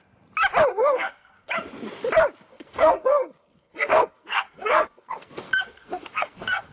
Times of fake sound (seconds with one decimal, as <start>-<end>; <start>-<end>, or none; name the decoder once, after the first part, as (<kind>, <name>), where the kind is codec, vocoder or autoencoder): 0.7-1.5 (codec, SNAC); 2.5-6.7

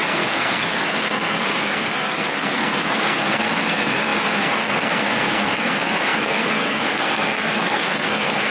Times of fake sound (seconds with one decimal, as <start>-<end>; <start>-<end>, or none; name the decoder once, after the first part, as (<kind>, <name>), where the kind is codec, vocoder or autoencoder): 0.0-8.5 (codec, SNAC)

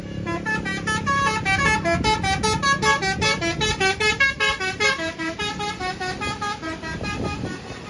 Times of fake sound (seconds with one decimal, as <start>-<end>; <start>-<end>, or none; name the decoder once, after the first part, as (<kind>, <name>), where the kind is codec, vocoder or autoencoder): none

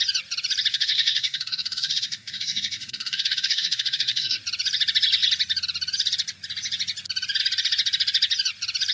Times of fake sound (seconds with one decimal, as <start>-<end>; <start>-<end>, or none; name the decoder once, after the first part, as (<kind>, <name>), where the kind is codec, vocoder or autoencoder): 0.7-4.4 (codec, SNAC)

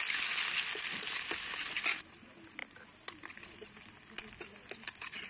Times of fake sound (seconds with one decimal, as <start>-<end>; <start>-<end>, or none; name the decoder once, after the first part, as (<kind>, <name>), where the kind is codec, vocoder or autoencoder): none

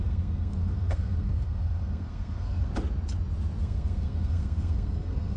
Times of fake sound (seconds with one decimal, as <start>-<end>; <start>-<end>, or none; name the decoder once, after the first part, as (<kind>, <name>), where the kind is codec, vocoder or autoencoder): 0.0-2.7 (codec, SNAC); 3.6-5.4

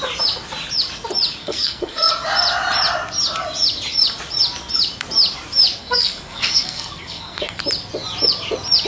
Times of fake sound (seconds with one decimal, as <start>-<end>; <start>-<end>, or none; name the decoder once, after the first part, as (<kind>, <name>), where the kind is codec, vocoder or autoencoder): 1.4-2.1 (codec, SNAC); 5.8-7.6

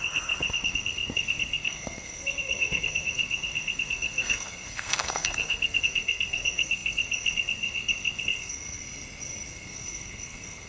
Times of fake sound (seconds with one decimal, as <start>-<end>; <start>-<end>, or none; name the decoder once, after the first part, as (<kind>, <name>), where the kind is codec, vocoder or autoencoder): 0.0-8.8 (codec, SNAC); 9.5-10.7